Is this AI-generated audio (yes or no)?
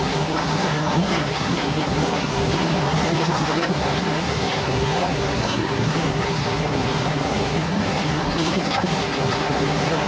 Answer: yes